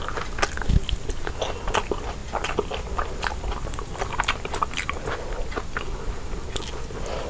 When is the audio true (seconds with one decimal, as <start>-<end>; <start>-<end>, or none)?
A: 0.0-7.3